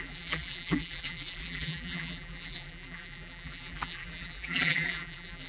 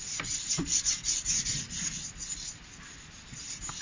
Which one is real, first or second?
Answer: second